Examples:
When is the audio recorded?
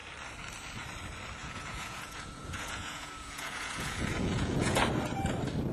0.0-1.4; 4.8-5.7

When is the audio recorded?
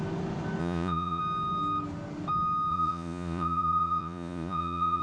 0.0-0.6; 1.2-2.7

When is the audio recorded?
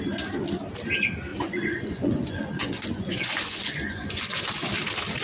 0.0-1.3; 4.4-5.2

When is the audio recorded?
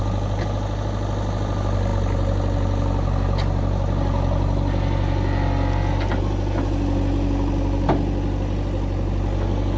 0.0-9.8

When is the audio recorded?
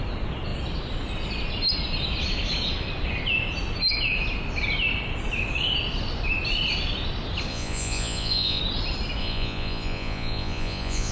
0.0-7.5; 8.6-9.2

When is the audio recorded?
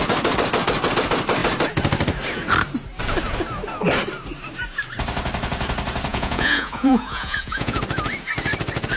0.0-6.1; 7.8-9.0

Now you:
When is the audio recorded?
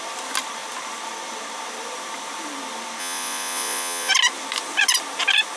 0.0-3.0; 4.1-5.6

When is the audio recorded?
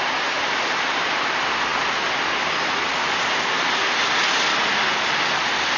0.0-5.8